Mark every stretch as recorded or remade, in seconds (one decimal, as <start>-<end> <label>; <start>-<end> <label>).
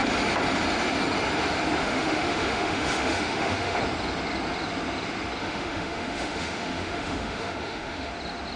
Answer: 0.0-1.8 recorded; 1.8-3.8 remade; 3.8-5.4 recorded; 5.4-8.1 remade; 8.1-8.6 recorded